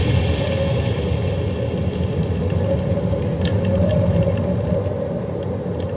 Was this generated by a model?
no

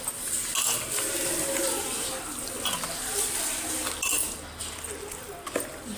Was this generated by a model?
no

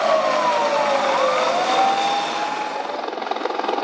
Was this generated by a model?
no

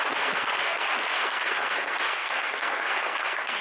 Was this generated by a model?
yes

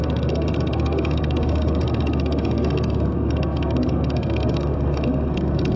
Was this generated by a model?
yes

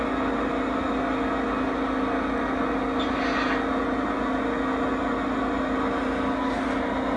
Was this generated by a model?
no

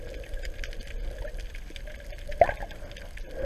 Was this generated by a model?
no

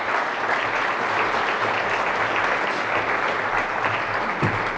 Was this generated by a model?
no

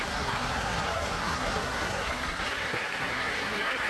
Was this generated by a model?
yes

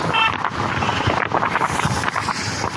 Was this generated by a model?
no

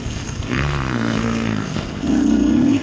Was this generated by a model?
yes